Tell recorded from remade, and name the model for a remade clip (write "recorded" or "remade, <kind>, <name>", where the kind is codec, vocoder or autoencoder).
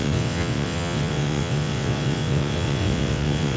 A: remade, vocoder, WaveNeXt